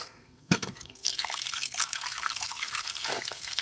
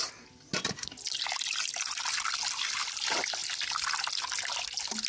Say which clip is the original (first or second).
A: second